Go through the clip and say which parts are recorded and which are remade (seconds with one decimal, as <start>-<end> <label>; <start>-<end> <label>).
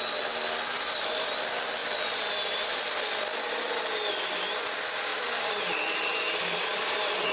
0.0-5.1 recorded; 5.1-7.3 remade